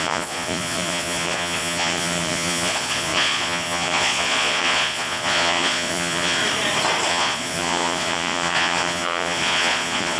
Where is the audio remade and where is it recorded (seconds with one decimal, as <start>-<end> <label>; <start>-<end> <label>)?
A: 0.0-6.4 remade; 6.4-7.1 recorded; 7.1-10.2 remade